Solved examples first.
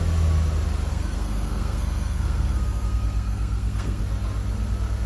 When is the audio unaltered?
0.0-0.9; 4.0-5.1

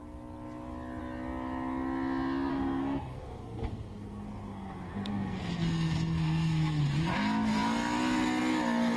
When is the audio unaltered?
0.0-2.5; 6.8-9.0

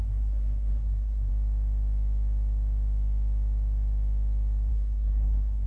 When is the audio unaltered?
1.3-4.7

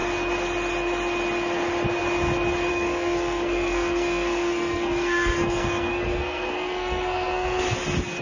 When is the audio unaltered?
0.0-2.7; 7.6-8.2

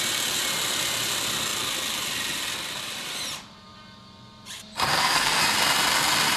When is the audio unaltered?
0.0-4.9; 5.4-6.4

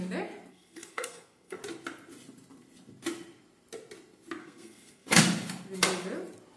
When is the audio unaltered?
0.0-0.5; 1.6-4.4; 5.2-6.6

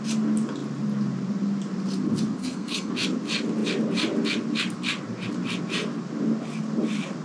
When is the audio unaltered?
0.0-2.4; 2.9-7.2

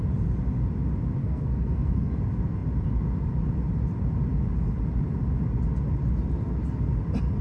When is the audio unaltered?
0.0-1.2; 2.1-7.4